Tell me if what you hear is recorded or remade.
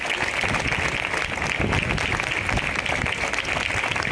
recorded